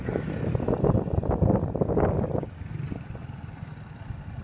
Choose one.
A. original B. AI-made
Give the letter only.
A